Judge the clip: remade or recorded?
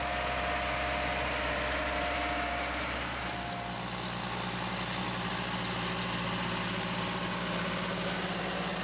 recorded